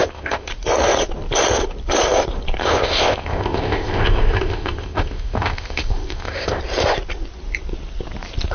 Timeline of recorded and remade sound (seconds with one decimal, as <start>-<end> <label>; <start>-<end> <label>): 0.0-0.5 remade; 0.5-2.6 recorded; 2.6-6.6 remade; 6.6-8.5 recorded